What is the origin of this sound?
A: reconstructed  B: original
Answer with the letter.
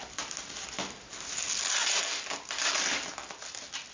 B